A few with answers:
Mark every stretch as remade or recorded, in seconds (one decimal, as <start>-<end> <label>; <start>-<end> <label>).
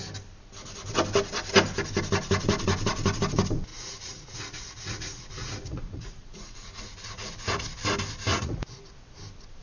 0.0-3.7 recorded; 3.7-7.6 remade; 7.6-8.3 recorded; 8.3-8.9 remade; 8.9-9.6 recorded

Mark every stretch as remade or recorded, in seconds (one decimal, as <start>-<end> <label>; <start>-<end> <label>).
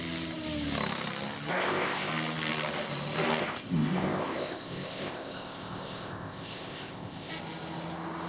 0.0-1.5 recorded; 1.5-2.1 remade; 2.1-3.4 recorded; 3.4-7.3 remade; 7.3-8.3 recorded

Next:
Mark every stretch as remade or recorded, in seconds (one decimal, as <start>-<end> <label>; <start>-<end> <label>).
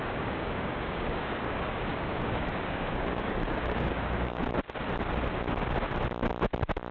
0.0-4.4 remade; 4.4-6.9 recorded